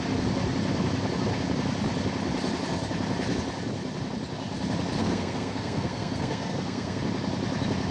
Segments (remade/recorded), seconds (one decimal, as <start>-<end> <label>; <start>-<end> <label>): 0.0-5.0 recorded; 5.0-7.0 remade; 7.0-7.9 recorded